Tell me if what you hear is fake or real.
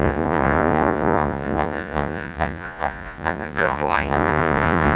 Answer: fake